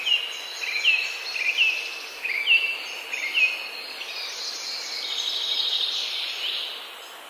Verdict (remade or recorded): recorded